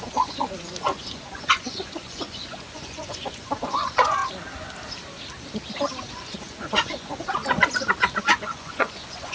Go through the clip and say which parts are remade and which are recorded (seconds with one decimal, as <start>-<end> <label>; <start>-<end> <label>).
0.0-4.2 remade; 4.2-6.1 recorded; 6.1-7.4 remade; 7.4-8.2 recorded; 8.2-9.3 remade